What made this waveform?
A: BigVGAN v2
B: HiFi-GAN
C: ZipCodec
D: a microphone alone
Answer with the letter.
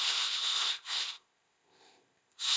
C